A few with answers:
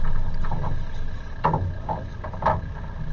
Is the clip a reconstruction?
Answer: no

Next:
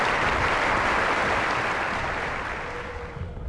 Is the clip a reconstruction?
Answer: no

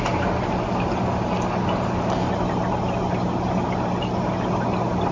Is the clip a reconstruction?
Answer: no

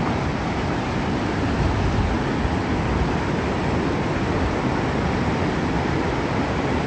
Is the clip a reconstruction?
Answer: no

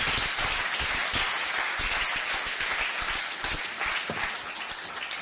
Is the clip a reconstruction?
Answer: no